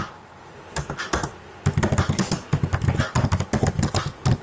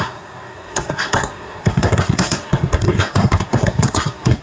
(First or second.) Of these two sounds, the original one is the first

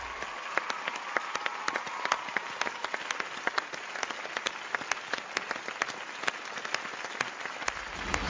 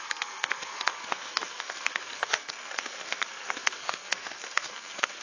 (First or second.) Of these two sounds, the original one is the first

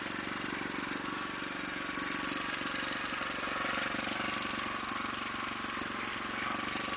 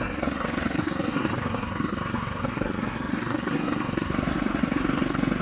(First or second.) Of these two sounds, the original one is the first